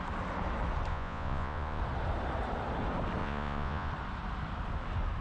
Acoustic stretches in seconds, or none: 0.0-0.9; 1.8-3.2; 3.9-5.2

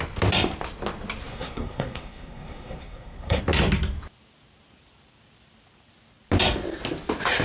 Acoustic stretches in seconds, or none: 0.0-1.3; 3.4-7.4

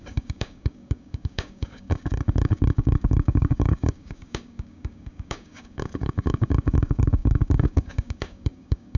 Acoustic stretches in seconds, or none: none